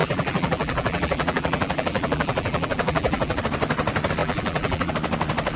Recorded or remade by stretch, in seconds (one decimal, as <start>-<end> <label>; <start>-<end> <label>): 0.0-3.4 remade; 3.4-4.2 recorded; 4.2-4.9 remade; 4.9-5.6 recorded